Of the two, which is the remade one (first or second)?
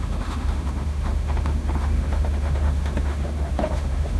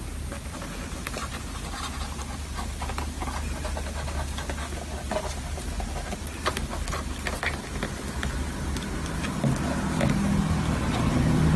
first